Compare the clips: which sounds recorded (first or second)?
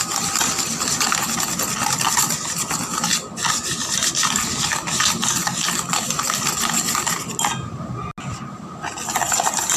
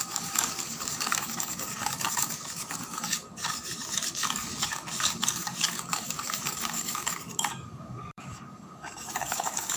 first